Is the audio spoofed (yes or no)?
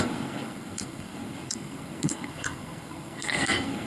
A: yes